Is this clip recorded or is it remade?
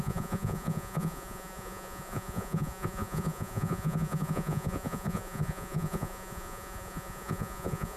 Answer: remade